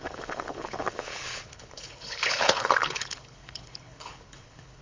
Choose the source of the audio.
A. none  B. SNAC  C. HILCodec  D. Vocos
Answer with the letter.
C